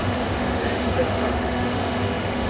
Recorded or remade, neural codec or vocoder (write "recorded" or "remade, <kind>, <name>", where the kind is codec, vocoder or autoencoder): remade, autoencoder, DAC-VAE